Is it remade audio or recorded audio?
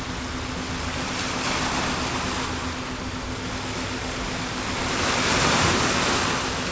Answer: recorded